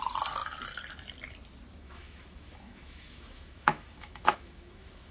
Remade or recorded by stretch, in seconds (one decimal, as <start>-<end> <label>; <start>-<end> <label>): 0.0-1.8 recorded; 1.8-5.1 remade

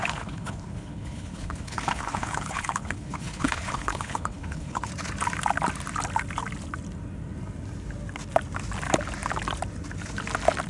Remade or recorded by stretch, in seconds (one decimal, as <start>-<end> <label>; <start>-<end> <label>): 0.0-4.9 remade; 4.9-10.7 recorded

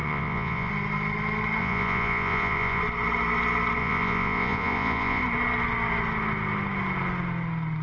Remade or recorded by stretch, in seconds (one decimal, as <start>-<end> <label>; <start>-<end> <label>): 0.0-0.7 remade; 0.7-1.6 recorded; 1.6-2.8 remade; 2.8-3.8 recorded; 3.8-5.2 remade; 5.2-7.8 recorded

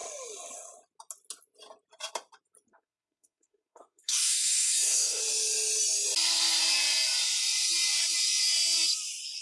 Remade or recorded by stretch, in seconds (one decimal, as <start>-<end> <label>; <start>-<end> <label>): 0.0-2.7 recorded; 2.7-5.2 remade; 5.2-9.4 recorded

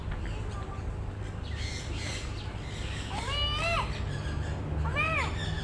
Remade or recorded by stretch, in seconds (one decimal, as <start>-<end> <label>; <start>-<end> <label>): 0.0-5.6 recorded

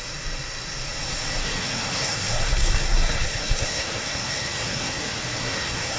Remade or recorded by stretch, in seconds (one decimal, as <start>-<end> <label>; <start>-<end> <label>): 0.0-1.4 recorded; 1.4-5.0 remade; 5.0-5.4 recorded; 5.4-6.0 remade